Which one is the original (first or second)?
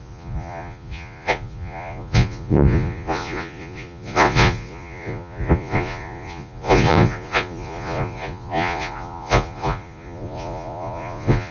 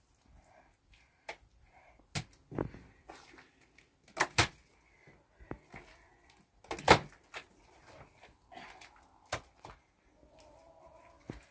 second